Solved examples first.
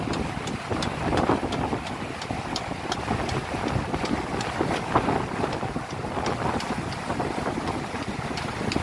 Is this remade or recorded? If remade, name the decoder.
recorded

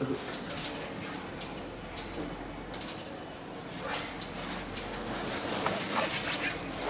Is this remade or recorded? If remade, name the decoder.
recorded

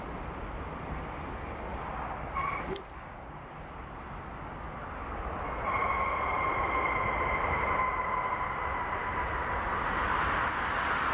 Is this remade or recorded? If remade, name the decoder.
recorded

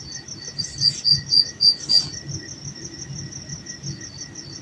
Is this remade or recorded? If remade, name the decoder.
recorded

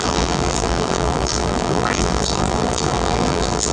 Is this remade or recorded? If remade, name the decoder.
remade, vocoder, BigVGAN v2